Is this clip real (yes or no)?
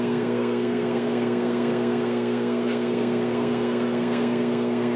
no